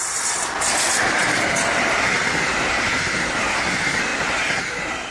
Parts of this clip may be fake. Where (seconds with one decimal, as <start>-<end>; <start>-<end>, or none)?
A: none